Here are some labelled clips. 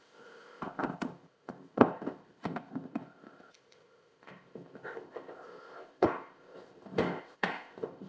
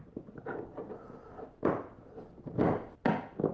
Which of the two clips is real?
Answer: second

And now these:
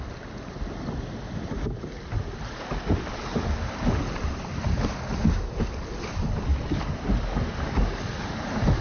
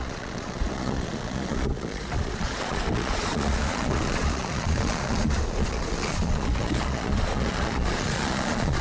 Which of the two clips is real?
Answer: first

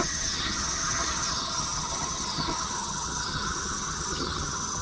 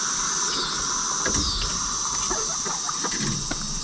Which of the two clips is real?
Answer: second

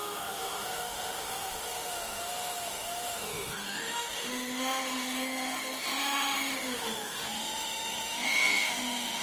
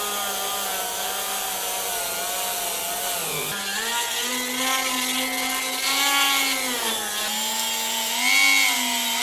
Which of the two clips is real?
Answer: second